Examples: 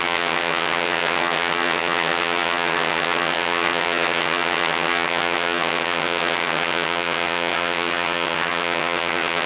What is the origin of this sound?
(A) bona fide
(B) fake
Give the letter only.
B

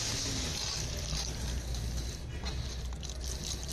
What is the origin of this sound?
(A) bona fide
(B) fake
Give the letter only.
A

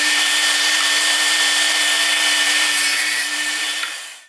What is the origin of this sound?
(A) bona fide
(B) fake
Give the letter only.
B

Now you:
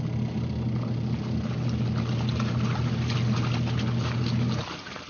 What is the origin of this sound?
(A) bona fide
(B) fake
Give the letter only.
A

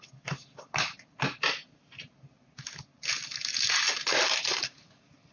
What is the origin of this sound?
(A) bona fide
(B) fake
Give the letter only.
A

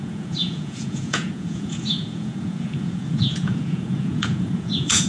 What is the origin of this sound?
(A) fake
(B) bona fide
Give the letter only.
A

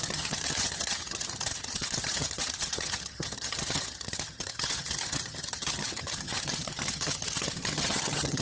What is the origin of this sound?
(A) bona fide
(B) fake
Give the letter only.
B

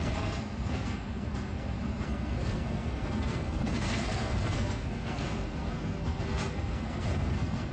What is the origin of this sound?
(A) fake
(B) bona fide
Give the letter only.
A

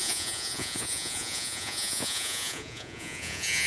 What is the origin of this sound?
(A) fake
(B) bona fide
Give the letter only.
A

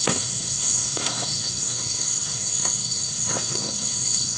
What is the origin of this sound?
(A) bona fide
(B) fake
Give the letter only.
B